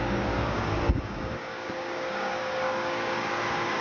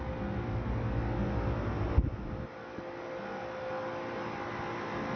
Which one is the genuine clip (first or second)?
second